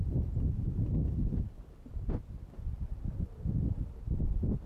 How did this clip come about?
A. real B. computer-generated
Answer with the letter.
B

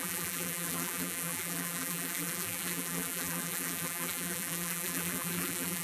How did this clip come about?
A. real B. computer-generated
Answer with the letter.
B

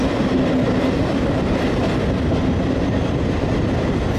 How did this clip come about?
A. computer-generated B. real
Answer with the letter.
B